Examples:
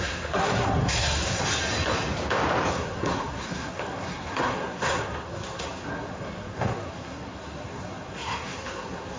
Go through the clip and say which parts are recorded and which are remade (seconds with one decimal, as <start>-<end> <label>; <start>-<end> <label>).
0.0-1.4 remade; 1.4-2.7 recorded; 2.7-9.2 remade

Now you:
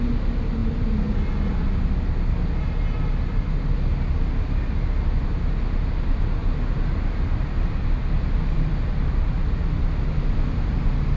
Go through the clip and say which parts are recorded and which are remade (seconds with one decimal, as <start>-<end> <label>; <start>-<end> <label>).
0.0-11.2 recorded

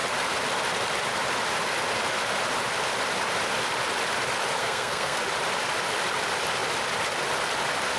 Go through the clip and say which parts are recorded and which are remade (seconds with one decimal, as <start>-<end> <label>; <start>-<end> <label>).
0.0-4.6 recorded; 4.6-5.2 remade; 5.2-8.0 recorded

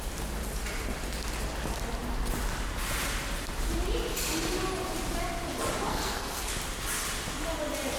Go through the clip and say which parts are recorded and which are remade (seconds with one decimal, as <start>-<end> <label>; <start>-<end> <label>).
0.0-5.9 recorded; 5.9-6.5 remade; 6.5-8.0 recorded

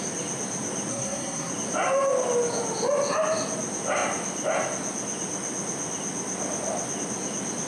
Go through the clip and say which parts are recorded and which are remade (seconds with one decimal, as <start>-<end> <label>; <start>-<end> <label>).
0.0-0.9 recorded; 0.9-1.5 remade; 1.5-7.7 recorded

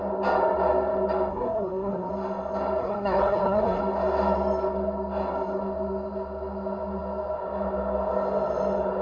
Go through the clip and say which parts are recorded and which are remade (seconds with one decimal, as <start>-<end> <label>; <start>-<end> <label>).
0.0-1.3 recorded; 1.3-2.1 remade; 2.1-2.8 recorded; 2.8-3.8 remade; 3.8-9.0 recorded

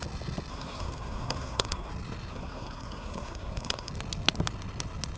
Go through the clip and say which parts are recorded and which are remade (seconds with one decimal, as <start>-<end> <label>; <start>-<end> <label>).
0.0-0.5 recorded; 0.5-1.9 remade; 1.9-2.3 recorded; 2.3-3.9 remade; 3.9-5.2 recorded